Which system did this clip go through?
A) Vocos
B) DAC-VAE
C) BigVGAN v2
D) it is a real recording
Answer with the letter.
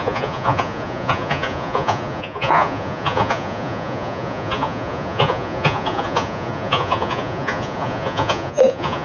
A